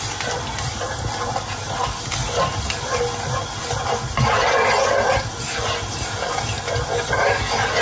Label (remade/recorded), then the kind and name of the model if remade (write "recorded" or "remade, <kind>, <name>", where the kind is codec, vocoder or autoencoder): recorded